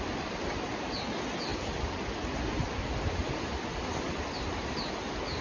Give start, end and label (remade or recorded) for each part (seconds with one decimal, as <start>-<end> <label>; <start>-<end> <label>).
0.0-5.4 recorded

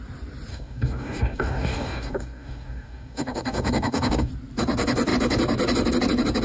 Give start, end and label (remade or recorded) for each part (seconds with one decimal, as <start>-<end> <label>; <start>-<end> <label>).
0.0-0.5 recorded; 0.5-4.3 remade; 4.3-6.4 recorded

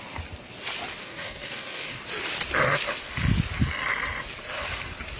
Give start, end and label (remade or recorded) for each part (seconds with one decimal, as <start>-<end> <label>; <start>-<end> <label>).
0.0-1.0 recorded; 1.0-2.0 remade; 2.0-5.2 recorded

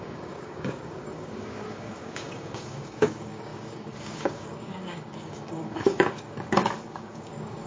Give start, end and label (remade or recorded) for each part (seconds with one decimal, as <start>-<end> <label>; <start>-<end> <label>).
0.0-7.7 remade

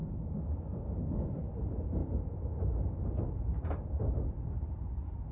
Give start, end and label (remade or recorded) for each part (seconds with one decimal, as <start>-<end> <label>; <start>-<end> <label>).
0.0-1.4 remade; 1.4-5.3 recorded

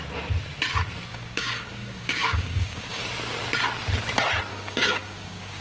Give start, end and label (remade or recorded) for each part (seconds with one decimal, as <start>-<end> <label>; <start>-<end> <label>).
0.0-1.1 recorded; 1.1-3.0 remade; 3.0-4.5 recorded; 4.5-5.6 remade

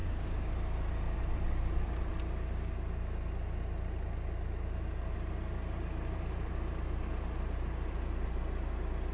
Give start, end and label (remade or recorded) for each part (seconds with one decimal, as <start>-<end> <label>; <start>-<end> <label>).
0.0-0.5 remade; 0.5-9.1 recorded

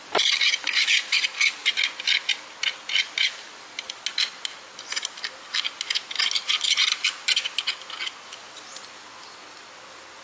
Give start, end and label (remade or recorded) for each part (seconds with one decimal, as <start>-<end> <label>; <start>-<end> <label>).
0.0-10.2 recorded